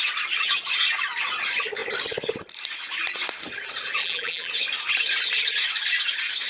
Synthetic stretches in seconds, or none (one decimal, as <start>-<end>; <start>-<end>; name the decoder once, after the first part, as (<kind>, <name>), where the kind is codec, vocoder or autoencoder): 4.0-4.5 (vocoder, BigVGAN v2)